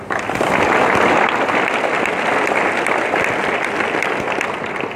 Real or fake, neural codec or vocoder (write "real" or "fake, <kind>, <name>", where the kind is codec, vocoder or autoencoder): real